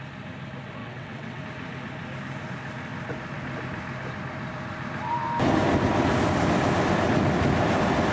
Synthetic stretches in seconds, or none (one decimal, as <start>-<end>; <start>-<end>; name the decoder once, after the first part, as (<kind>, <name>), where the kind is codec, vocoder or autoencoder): 0.8-1.4 (vocoder, WaveNeXt)